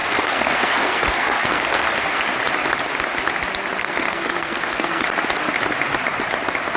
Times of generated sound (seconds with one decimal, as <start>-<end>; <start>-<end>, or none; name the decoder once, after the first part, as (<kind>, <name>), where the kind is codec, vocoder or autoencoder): 0.0-2.2 (codec, SNAC); 3.8-5.0